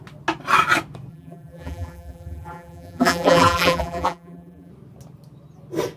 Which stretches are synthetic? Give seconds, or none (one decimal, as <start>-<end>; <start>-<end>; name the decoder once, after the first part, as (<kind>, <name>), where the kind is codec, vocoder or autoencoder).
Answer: 1.1-4.7 (vocoder, BigVGAN v2)